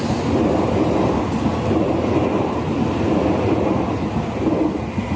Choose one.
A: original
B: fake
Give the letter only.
A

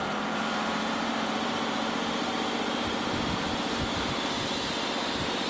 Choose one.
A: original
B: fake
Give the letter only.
B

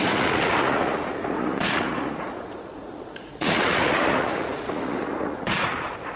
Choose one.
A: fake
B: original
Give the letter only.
A